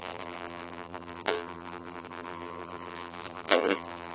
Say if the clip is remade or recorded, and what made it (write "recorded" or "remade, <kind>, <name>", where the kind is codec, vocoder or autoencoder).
remade, vocoder, BigVGAN v2